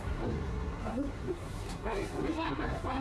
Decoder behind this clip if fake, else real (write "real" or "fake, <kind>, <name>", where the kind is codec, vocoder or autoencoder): fake, codec, SNAC